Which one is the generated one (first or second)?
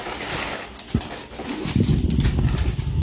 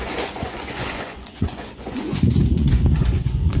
second